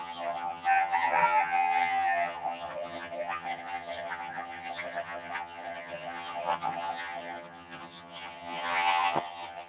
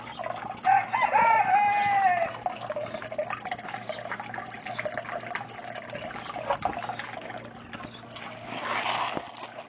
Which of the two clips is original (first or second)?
second